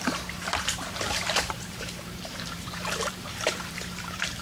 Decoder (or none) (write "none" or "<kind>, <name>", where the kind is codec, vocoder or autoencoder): vocoder, BigVGAN v2